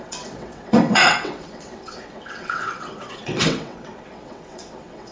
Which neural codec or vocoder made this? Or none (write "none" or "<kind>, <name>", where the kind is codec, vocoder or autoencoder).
vocoder, WaveNeXt